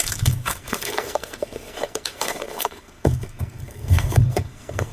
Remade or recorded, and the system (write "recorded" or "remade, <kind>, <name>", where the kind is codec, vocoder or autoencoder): remade, codec, SNAC